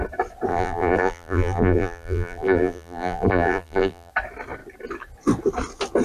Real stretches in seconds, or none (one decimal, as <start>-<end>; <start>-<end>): 0.0-0.5; 4.1-6.0